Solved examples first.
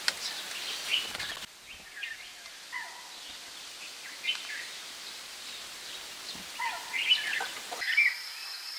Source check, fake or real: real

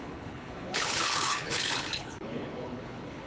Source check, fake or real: fake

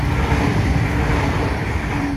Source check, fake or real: real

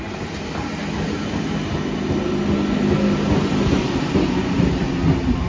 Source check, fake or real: real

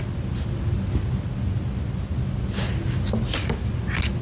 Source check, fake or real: real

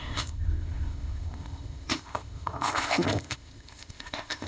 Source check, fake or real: fake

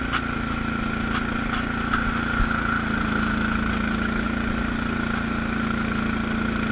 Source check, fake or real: real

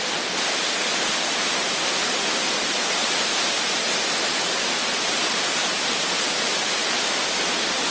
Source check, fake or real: real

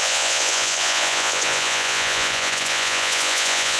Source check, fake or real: fake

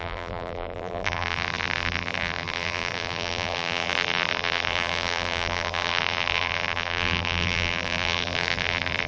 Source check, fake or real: fake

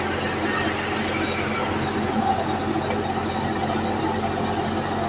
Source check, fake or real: real